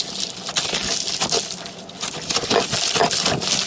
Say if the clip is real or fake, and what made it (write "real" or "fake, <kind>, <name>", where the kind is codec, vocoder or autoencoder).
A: real